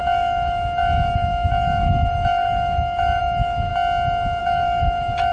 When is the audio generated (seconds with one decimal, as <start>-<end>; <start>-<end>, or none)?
0.0-3.7; 4.4-5.3